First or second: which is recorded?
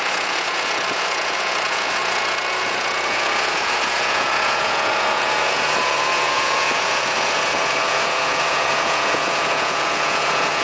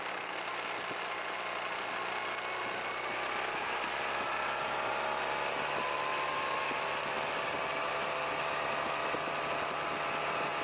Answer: second